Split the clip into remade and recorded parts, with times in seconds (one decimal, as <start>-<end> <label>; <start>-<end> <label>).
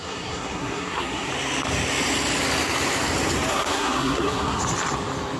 0.0-1.3 remade; 1.3-3.5 recorded; 3.5-4.6 remade; 4.6-5.4 recorded